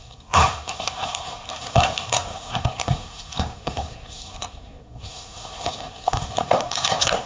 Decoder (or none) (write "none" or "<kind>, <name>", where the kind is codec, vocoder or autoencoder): codec, SNAC